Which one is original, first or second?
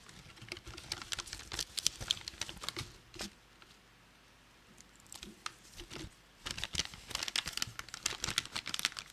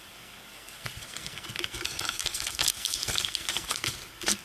first